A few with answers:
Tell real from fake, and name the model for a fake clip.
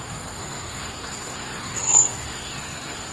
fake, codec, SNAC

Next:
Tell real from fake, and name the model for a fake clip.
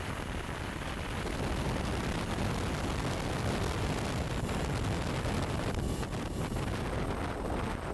real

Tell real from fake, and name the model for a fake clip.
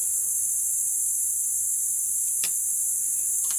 real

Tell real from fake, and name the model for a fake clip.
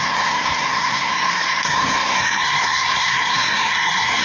fake, codec, SNAC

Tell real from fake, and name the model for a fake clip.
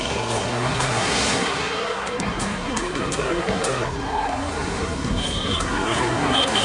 fake, codec, SNAC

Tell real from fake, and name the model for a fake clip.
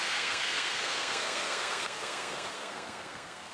fake, codec, SNAC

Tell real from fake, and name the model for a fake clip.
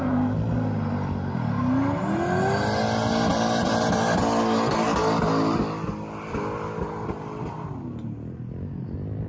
real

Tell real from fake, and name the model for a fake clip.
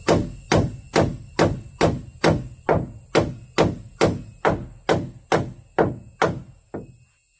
real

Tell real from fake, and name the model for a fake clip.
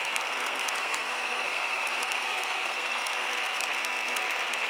fake, codec, SNAC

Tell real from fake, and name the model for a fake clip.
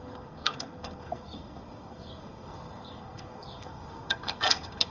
fake, codec, SNAC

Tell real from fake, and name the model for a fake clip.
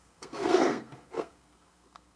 fake, codec, SNAC